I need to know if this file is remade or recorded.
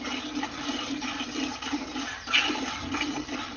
recorded